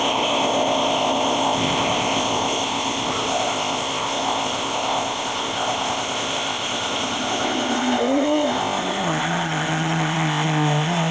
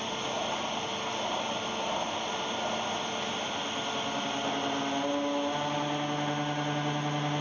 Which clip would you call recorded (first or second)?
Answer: second